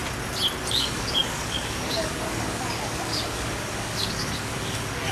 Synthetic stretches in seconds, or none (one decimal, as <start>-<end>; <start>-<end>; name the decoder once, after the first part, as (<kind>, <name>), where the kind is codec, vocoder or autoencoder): 0.7-5.1 (codec, DAC)